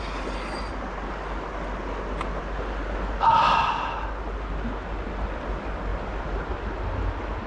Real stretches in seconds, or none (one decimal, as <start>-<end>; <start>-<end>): 0.0-7.5